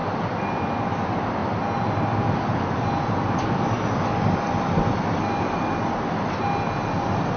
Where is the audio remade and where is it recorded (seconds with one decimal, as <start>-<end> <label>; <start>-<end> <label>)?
0.0-0.6 remade; 0.6-1.4 recorded; 1.4-5.8 remade; 5.8-7.4 recorded